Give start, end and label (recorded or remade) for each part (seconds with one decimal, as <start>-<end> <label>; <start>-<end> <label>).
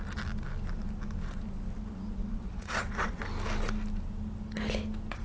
0.0-2.2 recorded; 2.2-3.2 remade; 3.2-5.2 recorded